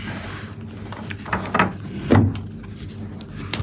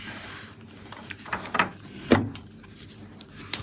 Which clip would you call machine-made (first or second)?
second